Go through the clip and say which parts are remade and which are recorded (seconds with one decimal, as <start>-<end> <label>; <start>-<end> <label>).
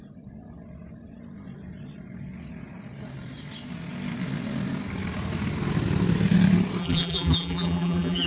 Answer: 0.0-6.8 recorded; 6.8-8.3 remade